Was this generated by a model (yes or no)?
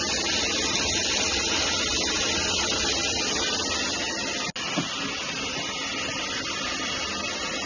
no